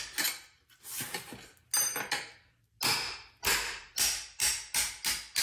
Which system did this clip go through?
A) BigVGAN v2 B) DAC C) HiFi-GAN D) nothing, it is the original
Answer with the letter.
D